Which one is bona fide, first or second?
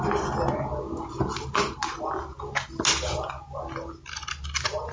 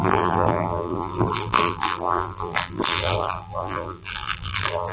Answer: first